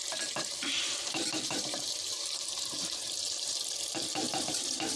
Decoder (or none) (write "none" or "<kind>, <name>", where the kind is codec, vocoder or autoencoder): vocoder, BigVGAN v2